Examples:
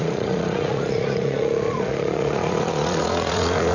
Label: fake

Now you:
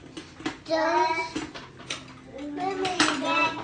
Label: real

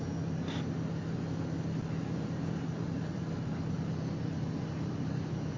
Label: real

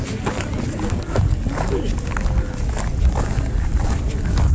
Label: real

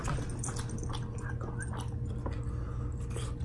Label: real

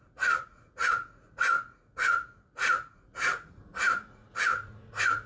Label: fake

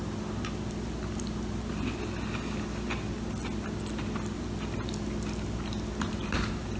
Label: real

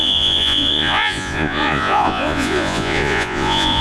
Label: fake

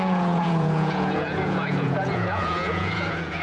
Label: fake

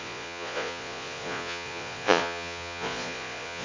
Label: fake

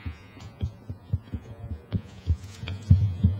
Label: fake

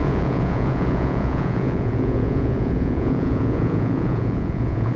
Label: fake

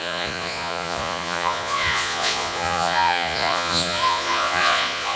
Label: fake